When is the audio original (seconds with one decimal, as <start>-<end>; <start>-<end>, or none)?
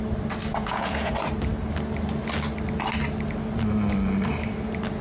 0.0-0.5; 1.1-5.0